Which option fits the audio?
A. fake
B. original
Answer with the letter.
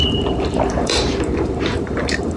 A